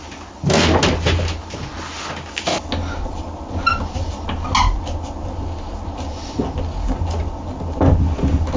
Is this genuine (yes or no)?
yes